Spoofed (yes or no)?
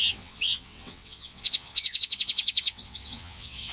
yes